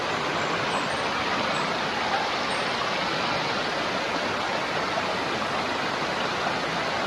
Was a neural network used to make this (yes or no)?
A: no